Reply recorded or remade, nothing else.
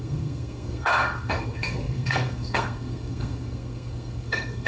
remade